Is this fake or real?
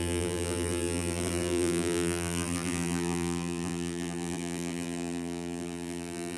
fake